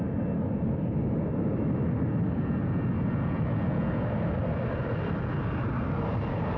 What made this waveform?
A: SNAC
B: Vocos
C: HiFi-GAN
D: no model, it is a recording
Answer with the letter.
D